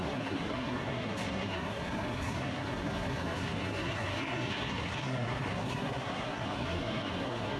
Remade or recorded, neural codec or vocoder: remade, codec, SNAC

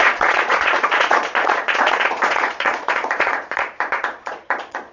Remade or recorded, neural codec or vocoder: remade, vocoder, Vocos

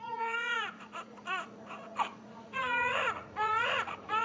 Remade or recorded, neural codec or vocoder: remade, vocoder, Vocos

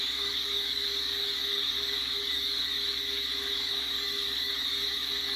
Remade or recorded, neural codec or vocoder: remade, codec, DAC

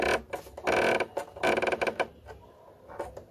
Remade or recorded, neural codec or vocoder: recorded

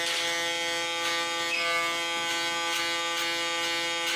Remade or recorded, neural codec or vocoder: recorded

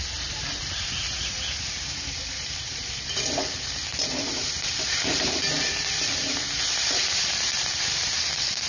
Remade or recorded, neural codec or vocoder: remade, vocoder, BigVGAN v2